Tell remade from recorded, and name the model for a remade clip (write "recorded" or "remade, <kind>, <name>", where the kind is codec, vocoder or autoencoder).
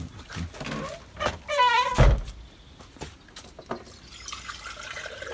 recorded